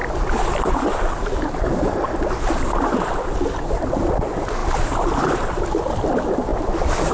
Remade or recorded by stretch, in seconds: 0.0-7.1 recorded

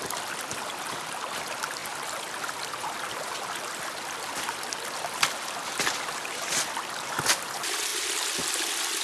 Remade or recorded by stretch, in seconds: 0.0-9.0 recorded

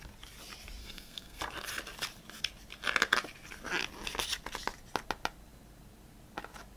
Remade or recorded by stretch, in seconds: 0.0-0.8 recorded; 0.8-1.4 remade; 1.4-6.8 recorded

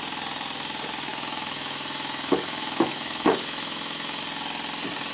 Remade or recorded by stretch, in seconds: 0.0-1.1 recorded; 1.1-4.2 remade; 4.2-5.1 recorded